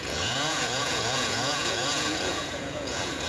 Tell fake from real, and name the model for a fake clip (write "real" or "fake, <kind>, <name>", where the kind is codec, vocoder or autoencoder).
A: fake, vocoder, Vocos